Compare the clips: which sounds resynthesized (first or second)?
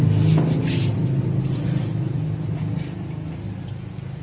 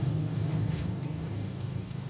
second